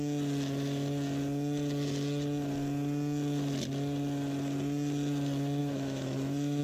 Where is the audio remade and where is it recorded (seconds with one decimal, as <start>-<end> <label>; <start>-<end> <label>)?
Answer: 0.0-5.6 recorded; 5.6-6.6 remade